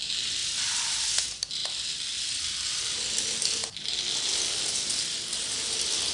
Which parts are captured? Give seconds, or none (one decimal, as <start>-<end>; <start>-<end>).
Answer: 0.0-6.1